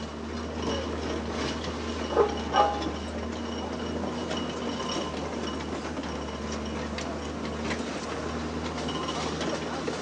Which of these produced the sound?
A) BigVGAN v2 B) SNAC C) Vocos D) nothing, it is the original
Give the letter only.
D